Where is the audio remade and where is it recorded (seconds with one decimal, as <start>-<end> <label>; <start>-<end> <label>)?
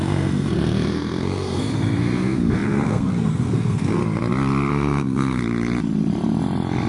0.0-4.0 remade; 4.0-4.7 recorded; 4.7-5.4 remade; 5.4-6.9 recorded